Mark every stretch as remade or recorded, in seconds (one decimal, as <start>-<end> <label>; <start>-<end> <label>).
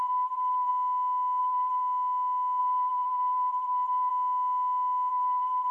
0.0-0.7 remade; 0.7-1.4 recorded; 1.4-1.8 remade; 1.8-2.6 recorded; 2.6-4.1 remade; 4.1-5.1 recorded; 5.1-5.7 remade